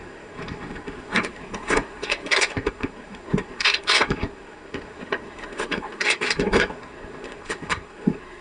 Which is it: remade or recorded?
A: remade